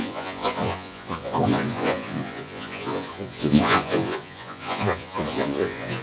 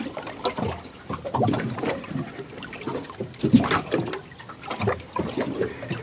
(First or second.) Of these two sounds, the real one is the second